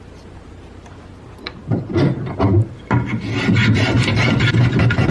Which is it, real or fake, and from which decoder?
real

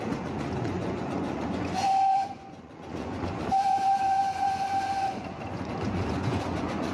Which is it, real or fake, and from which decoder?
fake, vocoder, Vocos